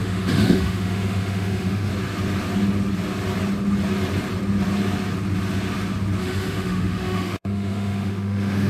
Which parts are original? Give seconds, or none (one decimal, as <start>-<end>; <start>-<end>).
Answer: 1.9-6.2